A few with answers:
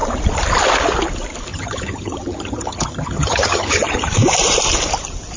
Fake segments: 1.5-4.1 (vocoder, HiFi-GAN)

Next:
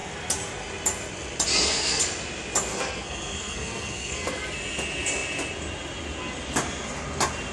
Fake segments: 1.5-2.0 (codec, SNAC); 2.7-4.4

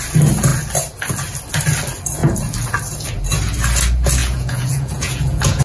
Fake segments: 4.2-5.6 (vocoder, Vocos)

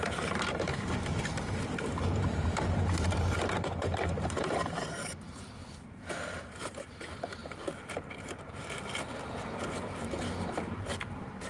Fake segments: 0.0-5.6 (vocoder, BigVGAN v2); 6.4-7.4; 8.3-8.9; 10.5-11.5

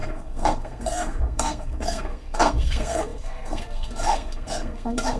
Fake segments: 0.0-5.2 (codec, SNAC)

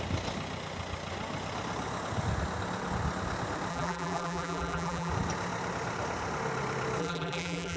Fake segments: 3.7-5.1 (vocoder, BigVGAN v2); 7.0-7.8